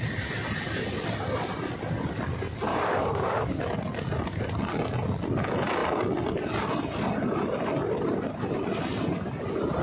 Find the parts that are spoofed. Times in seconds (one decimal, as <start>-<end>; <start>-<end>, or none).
2.7-3.6